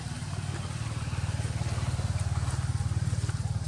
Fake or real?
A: real